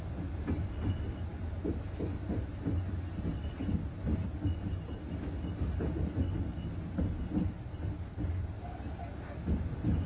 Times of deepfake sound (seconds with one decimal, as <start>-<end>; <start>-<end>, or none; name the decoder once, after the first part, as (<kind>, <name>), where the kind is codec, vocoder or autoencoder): none